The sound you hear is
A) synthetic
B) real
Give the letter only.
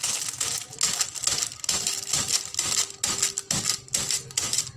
B